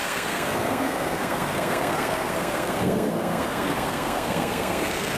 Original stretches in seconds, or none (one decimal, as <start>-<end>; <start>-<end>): none